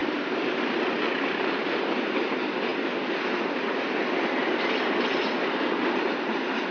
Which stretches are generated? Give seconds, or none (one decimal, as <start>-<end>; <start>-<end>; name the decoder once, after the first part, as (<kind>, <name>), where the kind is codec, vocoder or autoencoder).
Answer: 0.0-1.6 (vocoder, BigVGAN v2)

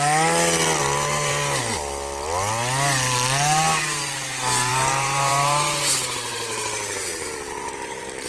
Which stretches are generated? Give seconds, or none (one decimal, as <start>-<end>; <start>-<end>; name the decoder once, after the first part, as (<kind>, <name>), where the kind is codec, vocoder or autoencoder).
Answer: 4.7-8.3 (vocoder, BigVGAN v2)

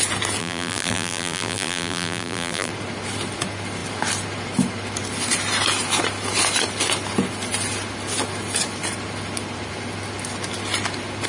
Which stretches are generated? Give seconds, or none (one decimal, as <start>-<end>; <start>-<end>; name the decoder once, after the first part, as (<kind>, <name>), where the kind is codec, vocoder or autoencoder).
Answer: 0.4-2.7 (vocoder, BigVGAN v2)

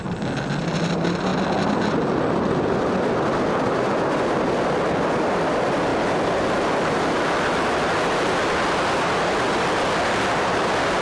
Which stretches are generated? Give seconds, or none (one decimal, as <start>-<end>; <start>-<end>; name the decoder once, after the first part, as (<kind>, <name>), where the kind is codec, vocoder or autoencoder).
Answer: none